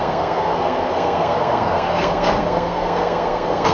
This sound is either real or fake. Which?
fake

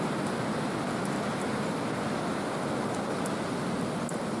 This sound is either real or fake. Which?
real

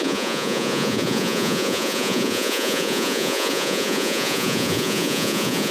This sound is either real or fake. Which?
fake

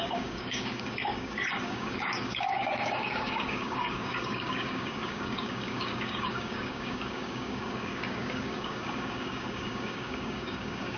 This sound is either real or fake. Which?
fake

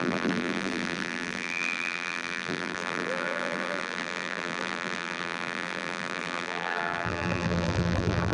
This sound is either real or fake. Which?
fake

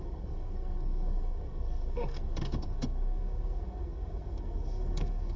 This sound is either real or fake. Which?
fake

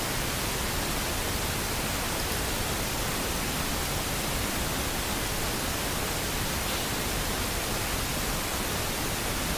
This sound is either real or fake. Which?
real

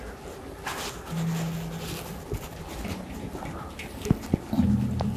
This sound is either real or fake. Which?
real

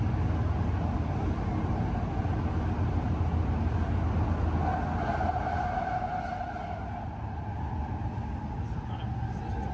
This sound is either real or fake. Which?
real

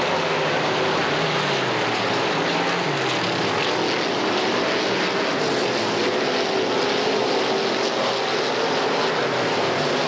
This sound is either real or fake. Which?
real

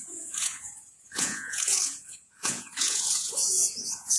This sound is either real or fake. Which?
fake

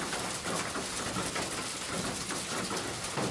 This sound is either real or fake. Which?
real